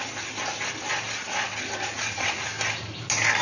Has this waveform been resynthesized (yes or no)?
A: no